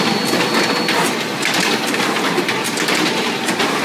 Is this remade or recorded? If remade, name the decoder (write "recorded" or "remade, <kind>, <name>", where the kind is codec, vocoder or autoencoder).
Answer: recorded